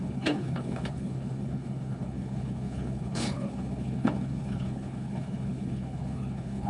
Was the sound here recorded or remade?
remade